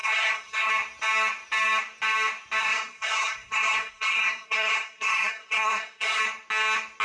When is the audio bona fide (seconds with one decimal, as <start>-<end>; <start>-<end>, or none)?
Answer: 0.7-2.6; 6.2-7.0